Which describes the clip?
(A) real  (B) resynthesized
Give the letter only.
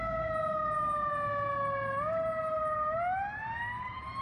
A